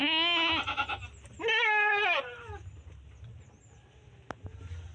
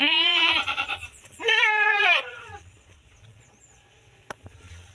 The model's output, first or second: second